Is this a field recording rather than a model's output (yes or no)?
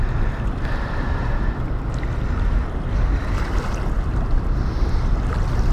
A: yes